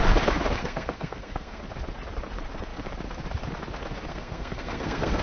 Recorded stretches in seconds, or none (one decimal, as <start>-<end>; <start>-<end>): 0.0-0.6; 1.6-4.1